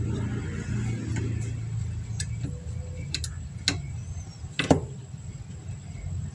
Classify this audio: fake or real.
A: real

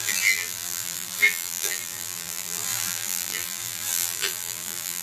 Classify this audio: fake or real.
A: fake